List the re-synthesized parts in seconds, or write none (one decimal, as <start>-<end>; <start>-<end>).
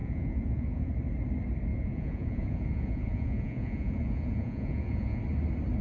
0.0-0.9; 1.7-5.2